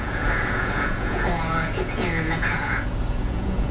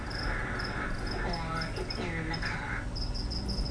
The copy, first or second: first